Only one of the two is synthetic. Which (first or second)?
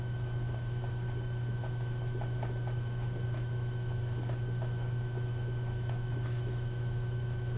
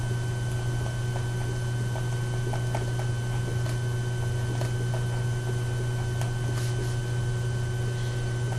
first